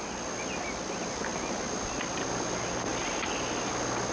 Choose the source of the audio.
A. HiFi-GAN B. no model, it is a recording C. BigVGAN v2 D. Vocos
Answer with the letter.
B